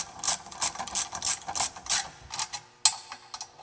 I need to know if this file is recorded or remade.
recorded